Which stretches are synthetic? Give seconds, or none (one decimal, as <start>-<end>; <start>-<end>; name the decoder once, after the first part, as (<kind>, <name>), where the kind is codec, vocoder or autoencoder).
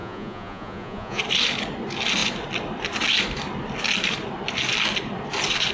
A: 0.0-1.2 (vocoder, Vocos)